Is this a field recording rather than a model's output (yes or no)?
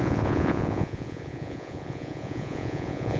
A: no